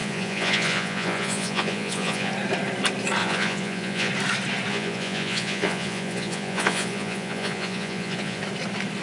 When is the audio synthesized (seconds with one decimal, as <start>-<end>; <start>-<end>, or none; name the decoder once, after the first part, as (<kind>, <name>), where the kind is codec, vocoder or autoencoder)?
0.0-2.3 (vocoder, Vocos); 3.2-4.1; 4.7-8.4